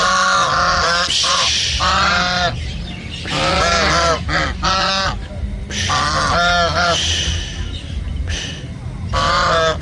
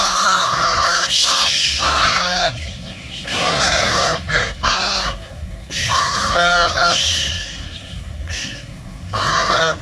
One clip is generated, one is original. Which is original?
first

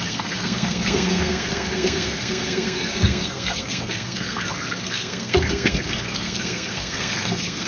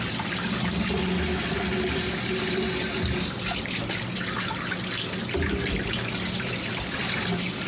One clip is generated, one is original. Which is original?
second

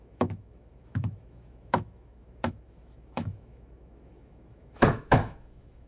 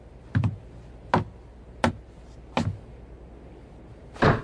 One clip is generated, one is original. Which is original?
second